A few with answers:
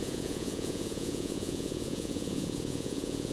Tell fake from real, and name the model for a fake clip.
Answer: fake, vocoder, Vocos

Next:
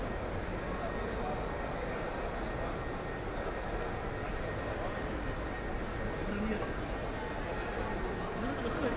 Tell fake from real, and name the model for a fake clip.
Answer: real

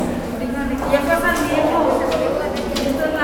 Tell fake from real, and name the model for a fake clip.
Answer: real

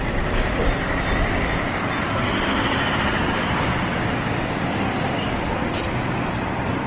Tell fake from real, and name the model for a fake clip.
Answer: fake, vocoder, BigVGAN v2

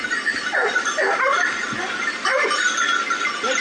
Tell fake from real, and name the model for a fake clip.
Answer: real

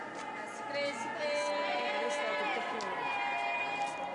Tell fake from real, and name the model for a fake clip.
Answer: real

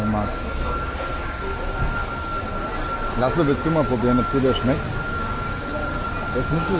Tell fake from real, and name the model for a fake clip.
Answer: real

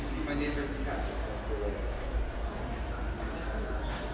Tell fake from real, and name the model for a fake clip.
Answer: real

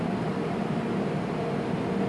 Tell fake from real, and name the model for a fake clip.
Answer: real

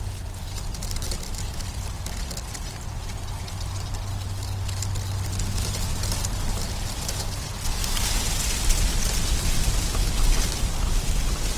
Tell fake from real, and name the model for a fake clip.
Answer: real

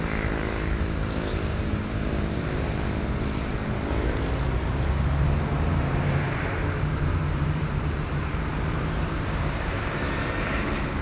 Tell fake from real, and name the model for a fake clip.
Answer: fake, vocoder, BigVGAN v2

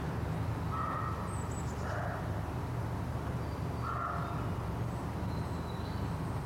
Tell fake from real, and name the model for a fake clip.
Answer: real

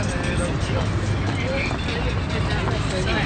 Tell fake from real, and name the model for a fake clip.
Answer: real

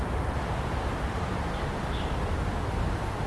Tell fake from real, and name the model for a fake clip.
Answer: real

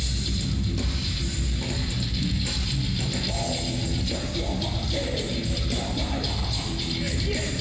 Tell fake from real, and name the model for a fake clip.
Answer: real